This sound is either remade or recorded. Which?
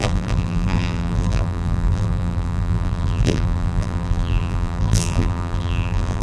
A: remade